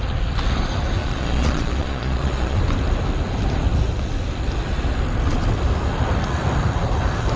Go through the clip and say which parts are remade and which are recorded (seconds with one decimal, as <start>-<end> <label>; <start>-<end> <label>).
0.0-1.0 recorded; 1.0-2.6 remade; 2.6-7.4 recorded